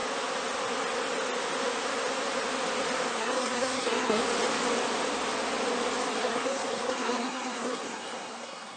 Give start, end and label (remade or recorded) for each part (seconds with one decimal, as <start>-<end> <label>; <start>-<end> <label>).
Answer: 0.0-3.1 recorded; 3.1-4.2 remade; 4.2-6.2 recorded; 6.2-8.8 remade